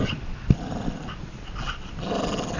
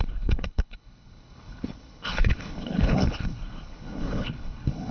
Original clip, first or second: first